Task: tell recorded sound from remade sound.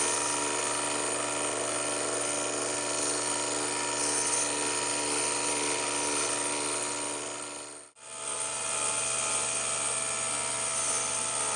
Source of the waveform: recorded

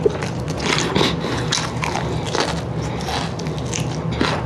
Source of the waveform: recorded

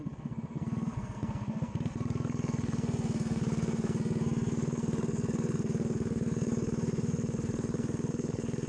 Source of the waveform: remade